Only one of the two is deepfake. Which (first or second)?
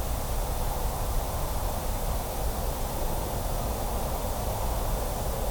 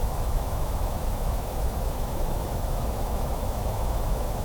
second